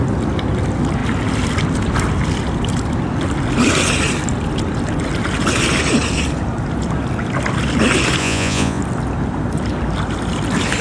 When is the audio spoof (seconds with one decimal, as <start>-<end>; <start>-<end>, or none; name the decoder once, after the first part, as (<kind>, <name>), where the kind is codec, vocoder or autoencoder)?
8.2-8.8 (vocoder, Vocos)